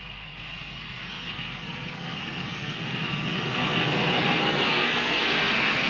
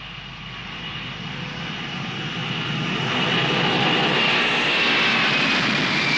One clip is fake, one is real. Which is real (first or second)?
second